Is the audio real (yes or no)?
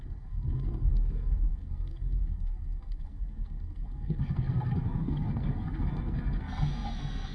no